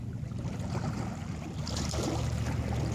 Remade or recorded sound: recorded